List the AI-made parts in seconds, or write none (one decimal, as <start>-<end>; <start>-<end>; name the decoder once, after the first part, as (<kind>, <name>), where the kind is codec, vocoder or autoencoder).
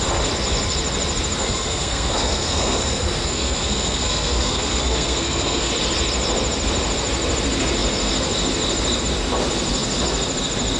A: 1.4-5.7 (codec, SNAC)